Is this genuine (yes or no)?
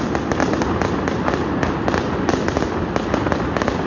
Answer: yes